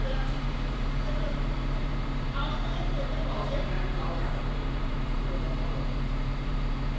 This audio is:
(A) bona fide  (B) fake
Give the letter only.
B